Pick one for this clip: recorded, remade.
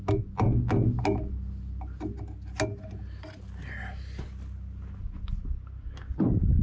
recorded